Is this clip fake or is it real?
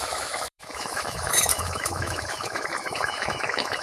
fake